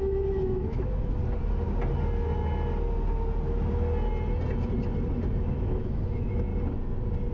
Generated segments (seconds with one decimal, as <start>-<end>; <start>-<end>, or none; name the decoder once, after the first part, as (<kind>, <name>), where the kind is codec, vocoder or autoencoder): 0.0-1.2 (autoencoder, DAC-VAE); 5.4-6.5